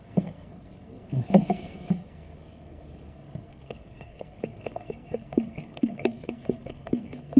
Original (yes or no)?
no